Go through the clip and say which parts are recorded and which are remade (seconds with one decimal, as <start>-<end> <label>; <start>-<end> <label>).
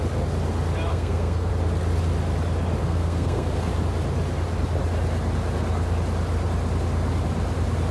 0.0-0.9 recorded; 0.9-1.5 remade; 1.5-2.8 recorded; 2.8-3.7 remade; 3.7-7.9 recorded